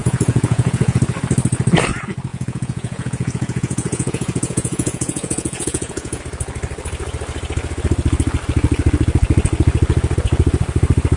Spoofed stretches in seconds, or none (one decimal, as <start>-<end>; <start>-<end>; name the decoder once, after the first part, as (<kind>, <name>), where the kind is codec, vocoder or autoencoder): 0.0-1.0 (vocoder, Vocos); 2.3-6.2